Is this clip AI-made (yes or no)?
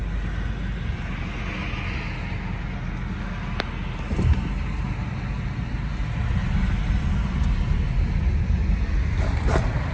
no